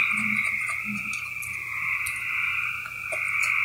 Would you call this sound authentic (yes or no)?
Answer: yes